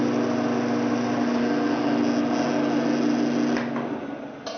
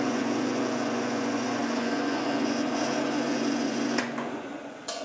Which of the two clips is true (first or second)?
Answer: first